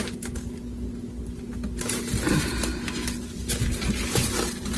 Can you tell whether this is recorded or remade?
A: recorded